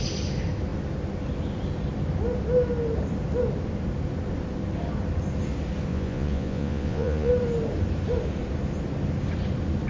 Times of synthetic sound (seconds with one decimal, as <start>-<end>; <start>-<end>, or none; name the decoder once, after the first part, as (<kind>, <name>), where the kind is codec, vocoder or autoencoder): 5.9-7.3 (vocoder, Vocos)